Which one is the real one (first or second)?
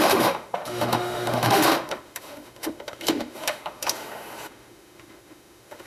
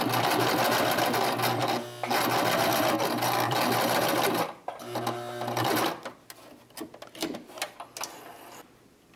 second